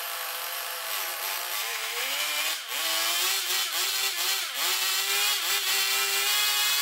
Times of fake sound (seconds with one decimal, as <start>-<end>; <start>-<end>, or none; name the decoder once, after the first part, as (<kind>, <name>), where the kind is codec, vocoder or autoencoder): 1.7-2.3 (autoencoder, DAC-VAE)